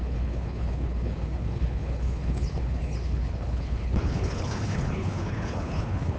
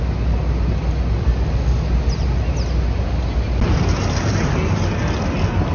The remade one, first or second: first